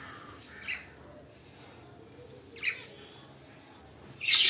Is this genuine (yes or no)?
yes